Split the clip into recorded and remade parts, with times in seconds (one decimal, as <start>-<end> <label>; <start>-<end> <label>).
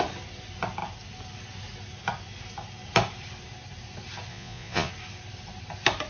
0.0-4.3 recorded; 4.3-4.9 remade; 4.9-6.1 recorded